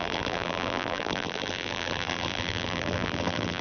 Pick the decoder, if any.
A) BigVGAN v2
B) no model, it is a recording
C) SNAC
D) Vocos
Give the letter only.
A